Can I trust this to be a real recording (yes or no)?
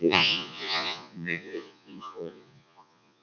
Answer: no